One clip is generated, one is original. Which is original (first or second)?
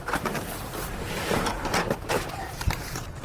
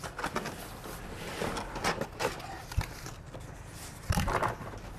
second